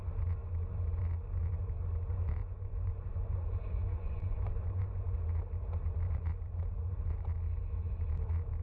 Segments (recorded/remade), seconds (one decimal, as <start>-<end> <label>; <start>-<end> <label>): 0.0-2.4 recorded; 2.4-5.2 remade; 5.2-8.6 recorded